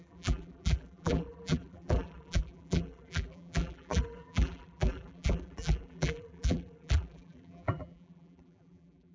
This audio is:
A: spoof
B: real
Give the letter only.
A